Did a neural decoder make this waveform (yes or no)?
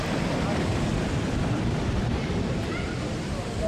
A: yes